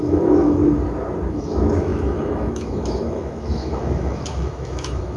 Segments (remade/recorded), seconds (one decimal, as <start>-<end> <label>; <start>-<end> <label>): 0.0-0.6 remade; 0.6-1.3 recorded; 1.3-5.2 remade